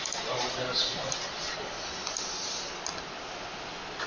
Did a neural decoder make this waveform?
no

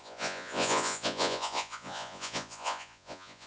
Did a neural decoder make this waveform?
yes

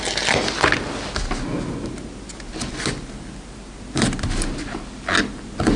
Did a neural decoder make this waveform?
no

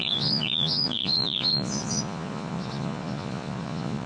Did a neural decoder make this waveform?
yes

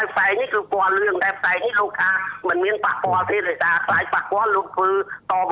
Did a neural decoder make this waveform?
no